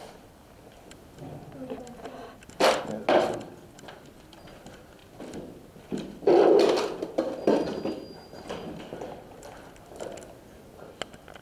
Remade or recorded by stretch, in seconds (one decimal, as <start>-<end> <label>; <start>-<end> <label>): 0.0-11.4 recorded